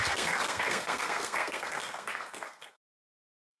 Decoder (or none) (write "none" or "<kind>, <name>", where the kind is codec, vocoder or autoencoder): codec, SNAC